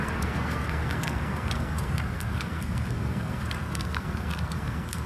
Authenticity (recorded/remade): remade